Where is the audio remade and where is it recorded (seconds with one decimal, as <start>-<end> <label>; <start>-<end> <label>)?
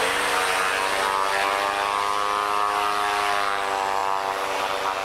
0.0-5.0 recorded